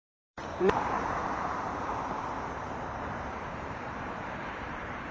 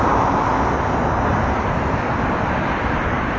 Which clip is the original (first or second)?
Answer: second